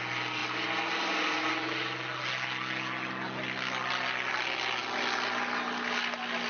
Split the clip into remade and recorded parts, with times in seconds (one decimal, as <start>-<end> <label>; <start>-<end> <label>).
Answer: 0.0-6.5 recorded